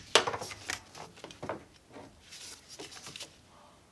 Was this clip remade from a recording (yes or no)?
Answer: no